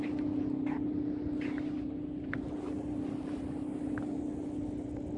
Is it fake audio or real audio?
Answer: real